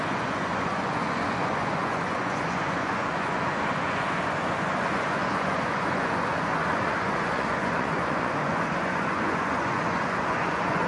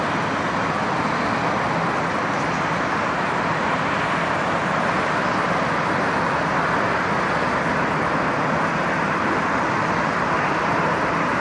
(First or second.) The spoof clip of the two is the first